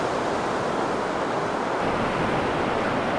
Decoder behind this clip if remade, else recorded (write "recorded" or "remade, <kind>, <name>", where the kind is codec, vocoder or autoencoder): recorded